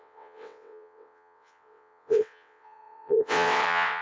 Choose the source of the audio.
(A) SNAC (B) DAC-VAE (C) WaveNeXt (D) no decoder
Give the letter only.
C